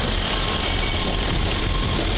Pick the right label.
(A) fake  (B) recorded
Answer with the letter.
B